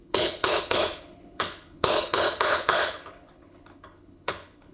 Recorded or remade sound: remade